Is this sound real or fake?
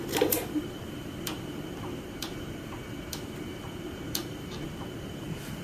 fake